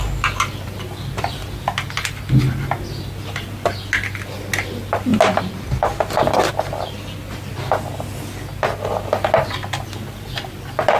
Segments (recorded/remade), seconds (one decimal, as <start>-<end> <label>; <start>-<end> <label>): 0.0-11.0 recorded